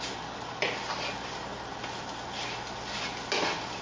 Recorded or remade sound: recorded